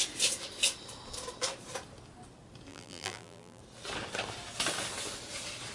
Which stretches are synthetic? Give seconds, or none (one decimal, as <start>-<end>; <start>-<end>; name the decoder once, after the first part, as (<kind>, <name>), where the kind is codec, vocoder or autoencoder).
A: 2.7-3.6 (vocoder, BigVGAN v2)